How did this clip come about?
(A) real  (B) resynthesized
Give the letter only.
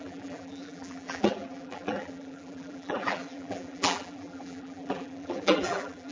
B